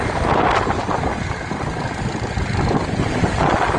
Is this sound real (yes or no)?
yes